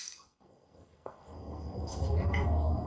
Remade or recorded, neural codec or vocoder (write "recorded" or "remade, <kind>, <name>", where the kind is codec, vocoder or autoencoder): remade, codec, SNAC